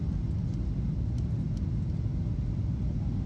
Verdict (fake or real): real